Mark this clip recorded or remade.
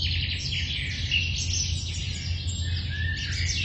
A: recorded